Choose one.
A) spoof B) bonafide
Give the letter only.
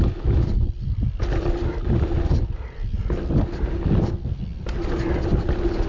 B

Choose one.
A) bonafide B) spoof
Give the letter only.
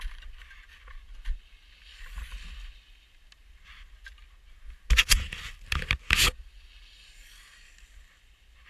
A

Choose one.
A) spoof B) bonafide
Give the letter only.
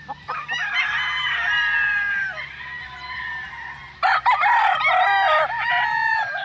B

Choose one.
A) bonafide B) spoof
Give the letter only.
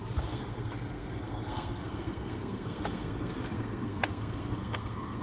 B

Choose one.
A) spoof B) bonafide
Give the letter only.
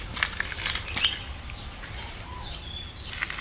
B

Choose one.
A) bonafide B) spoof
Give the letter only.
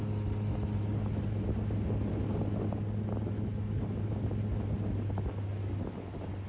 A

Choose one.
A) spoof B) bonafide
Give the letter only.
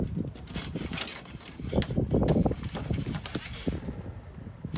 B